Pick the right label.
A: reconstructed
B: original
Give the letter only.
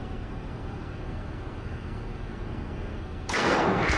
A